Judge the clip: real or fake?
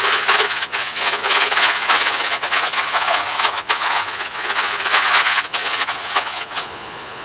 fake